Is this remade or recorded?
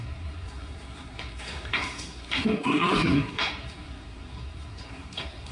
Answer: remade